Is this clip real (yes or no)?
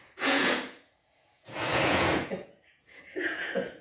no